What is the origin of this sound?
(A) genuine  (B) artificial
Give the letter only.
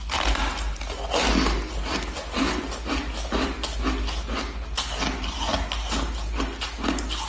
A